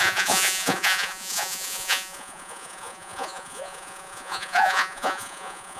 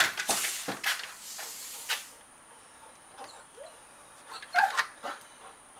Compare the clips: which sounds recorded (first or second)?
second